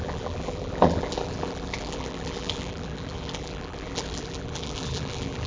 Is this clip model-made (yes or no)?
yes